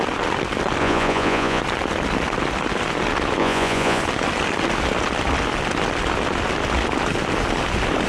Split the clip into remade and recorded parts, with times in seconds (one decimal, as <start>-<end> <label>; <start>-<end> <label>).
0.0-0.8 recorded; 0.8-1.6 remade; 1.6-3.4 recorded; 3.4-4.0 remade; 4.0-8.1 recorded